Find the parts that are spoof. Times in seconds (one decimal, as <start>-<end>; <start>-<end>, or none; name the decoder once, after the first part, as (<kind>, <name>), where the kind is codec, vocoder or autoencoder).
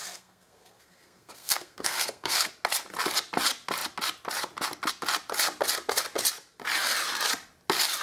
0.0-2.5 (codec, SNAC)